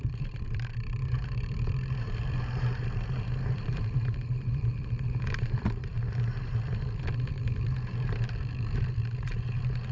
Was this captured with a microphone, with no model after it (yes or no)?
no